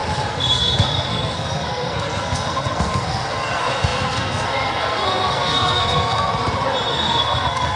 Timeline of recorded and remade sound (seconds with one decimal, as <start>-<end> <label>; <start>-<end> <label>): 0.0-6.3 remade; 6.3-6.9 recorded; 6.9-7.8 remade